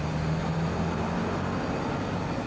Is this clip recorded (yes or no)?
yes